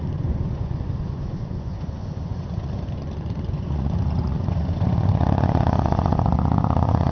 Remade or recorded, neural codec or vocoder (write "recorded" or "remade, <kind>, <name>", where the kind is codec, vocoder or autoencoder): remade, vocoder, Vocos